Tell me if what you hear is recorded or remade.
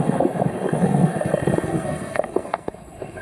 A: remade